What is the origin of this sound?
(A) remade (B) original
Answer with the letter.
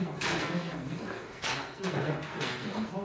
A